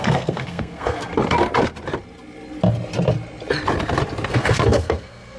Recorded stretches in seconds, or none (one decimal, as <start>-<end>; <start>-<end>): 1.1-4.3